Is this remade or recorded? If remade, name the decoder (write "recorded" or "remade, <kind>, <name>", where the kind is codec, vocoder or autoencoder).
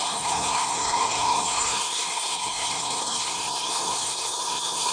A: remade, codec, SNAC